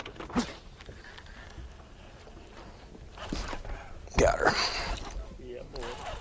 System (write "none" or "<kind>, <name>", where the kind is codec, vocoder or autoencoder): none